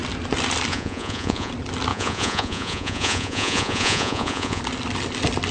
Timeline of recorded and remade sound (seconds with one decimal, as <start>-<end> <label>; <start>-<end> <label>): 0.0-0.7 recorded; 0.7-1.5 remade; 1.5-1.9 recorded; 1.9-4.6 remade; 4.6-5.5 recorded